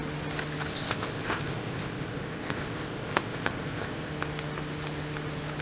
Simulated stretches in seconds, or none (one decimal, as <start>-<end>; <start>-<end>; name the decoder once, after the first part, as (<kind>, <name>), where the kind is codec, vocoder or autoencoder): 0.7-4.1 (codec, ZipCodec)